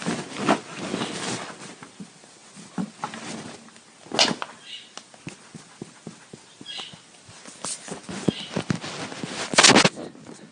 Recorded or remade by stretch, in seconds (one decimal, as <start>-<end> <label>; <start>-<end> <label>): 0.0-10.5 recorded